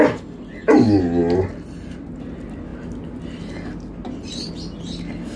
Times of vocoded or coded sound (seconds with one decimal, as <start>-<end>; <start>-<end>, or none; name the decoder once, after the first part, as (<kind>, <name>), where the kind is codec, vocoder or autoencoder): none